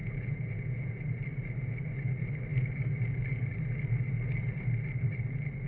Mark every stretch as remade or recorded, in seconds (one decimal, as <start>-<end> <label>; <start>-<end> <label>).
0.0-1.0 remade; 1.0-5.7 recorded